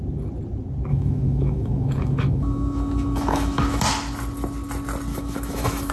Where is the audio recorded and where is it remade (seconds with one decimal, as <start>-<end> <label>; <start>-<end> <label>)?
0.0-0.9 recorded; 0.9-3.8 remade; 3.8-5.1 recorded; 5.1-5.9 remade